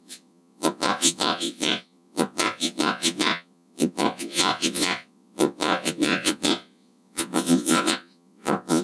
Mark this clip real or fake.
fake